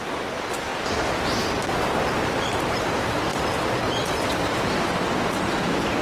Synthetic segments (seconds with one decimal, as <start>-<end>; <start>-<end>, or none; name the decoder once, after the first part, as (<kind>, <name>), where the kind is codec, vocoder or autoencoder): none

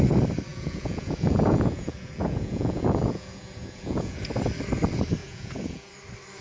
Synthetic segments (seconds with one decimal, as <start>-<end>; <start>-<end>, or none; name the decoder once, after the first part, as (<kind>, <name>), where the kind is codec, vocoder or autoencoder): 0.5-4.3 (vocoder, Vocos); 5.2-5.9

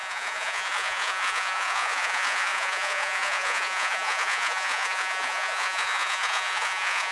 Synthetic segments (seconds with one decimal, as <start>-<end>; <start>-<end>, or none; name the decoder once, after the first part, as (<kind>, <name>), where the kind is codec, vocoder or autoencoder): 0.0-7.1 (vocoder, Vocos)

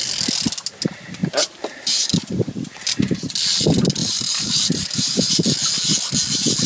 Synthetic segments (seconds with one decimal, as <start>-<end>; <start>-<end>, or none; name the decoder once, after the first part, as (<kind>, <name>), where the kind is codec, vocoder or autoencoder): 1.2-3.3 (vocoder, BigVGAN v2); 4.0-5.3

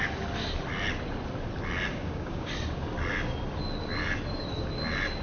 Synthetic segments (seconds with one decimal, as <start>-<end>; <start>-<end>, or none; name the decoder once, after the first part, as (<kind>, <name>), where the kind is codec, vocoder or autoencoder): 1.9-2.5 (codec, DAC)

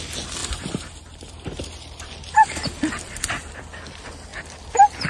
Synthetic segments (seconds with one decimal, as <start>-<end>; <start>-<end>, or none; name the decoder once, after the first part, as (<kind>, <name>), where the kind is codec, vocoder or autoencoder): 0.4-3.5 (vocoder, BigVGAN v2)